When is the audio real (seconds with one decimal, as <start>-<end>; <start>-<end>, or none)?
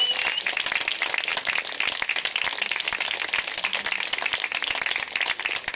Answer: 0.0-5.8